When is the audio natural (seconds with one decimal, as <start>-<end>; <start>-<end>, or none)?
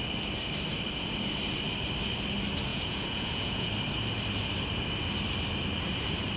0.0-2.7; 3.7-6.4